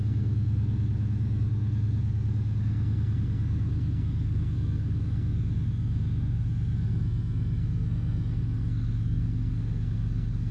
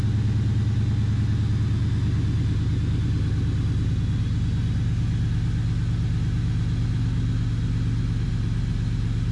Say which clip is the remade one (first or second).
first